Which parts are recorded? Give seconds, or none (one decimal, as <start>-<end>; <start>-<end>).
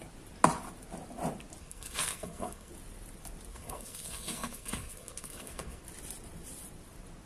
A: 0.0-1.6; 2.7-3.5; 5.8-7.3